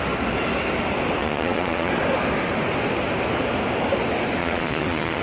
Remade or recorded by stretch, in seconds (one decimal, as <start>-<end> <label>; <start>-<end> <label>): 0.0-1.2 recorded; 1.2-1.9 remade; 1.9-4.4 recorded; 4.4-5.2 remade

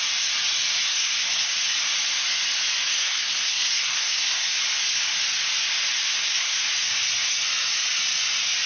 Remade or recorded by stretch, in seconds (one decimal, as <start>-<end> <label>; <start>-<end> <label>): 0.0-0.9 recorded; 0.9-1.5 remade; 1.5-2.9 recorded; 2.9-4.5 remade; 4.5-6.1 recorded; 6.1-6.6 remade; 6.6-8.7 recorded

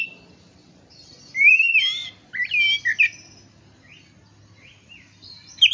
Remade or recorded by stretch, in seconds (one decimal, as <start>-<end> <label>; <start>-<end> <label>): 0.0-1.7 remade; 1.7-4.6 recorded; 4.6-5.7 remade

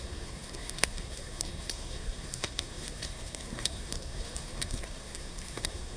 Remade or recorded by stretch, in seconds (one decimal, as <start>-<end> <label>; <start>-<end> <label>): 0.0-6.0 remade

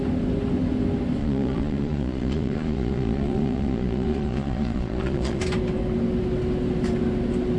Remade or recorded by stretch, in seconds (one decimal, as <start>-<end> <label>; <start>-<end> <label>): 0.0-1.2 recorded; 1.2-5.4 remade; 5.4-7.6 recorded

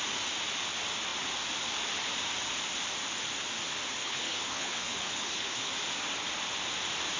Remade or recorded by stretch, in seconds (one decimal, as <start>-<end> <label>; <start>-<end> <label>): 0.0-4.0 recorded; 4.0-5.7 remade; 5.7-7.2 recorded